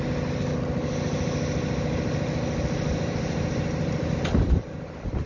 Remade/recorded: recorded